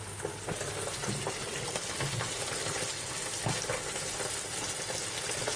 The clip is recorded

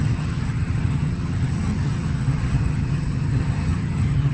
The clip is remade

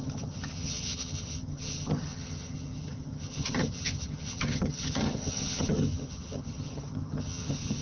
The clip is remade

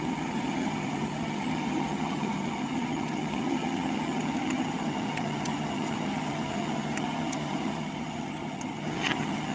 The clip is remade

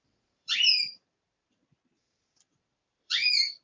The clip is remade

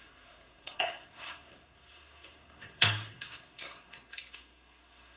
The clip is remade